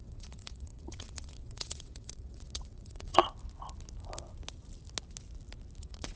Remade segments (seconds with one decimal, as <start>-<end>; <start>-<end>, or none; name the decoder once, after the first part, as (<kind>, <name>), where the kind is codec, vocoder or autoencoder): 0.0-3.2 (vocoder, WaveNeXt); 5.8-6.2